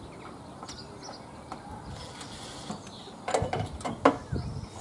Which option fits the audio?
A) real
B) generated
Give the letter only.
A